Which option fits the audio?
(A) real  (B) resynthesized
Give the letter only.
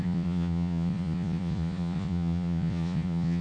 B